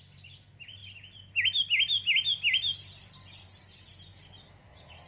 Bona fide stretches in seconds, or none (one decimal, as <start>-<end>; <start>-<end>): 0.0-5.1